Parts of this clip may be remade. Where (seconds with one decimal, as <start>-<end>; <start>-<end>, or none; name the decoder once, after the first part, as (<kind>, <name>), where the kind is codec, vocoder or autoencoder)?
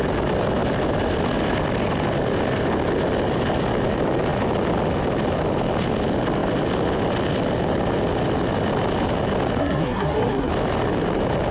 9.6-10.5 (codec, SNAC)